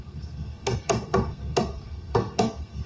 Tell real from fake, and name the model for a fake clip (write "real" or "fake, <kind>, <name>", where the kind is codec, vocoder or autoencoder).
fake, codec, SNAC